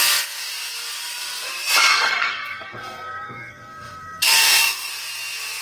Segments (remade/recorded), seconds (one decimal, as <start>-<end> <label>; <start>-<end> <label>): 0.0-1.9 recorded; 1.9-4.9 remade; 4.9-5.6 recorded